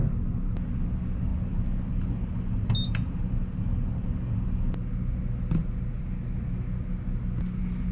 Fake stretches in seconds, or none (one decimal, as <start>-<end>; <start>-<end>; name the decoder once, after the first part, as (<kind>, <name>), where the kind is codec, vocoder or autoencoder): none